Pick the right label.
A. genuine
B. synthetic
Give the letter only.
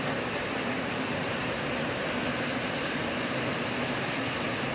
A